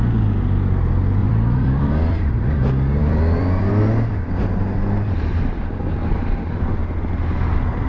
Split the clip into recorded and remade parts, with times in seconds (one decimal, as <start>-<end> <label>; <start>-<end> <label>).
0.0-1.2 recorded; 1.2-2.3 remade; 2.3-3.0 recorded; 3.0-3.7 remade; 3.7-7.9 recorded